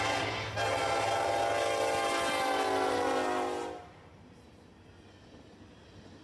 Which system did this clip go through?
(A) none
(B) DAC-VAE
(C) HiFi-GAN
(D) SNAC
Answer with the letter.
A